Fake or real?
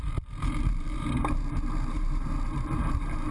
fake